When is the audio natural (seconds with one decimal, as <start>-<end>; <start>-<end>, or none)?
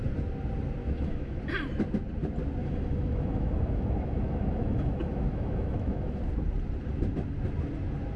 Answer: 0.0-0.8; 1.4-2.6; 6.2-8.2